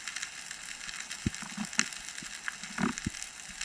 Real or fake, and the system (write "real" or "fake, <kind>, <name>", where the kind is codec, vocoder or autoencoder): real